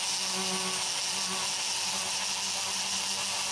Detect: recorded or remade recorded